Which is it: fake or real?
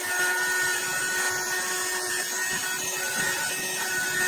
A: real